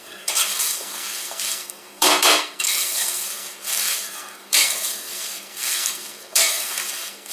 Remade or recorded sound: remade